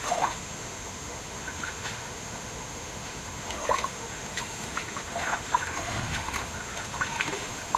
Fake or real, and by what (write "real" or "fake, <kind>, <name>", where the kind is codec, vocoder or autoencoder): fake, autoencoder, DAC-VAE